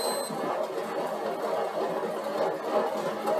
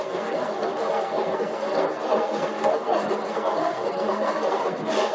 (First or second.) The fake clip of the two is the second